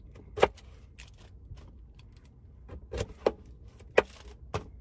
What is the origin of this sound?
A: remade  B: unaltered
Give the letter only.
B